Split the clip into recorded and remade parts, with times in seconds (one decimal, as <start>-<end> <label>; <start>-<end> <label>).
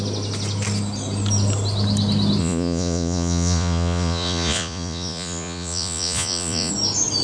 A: 0.0-2.4 recorded; 2.4-6.7 remade; 6.7-7.2 recorded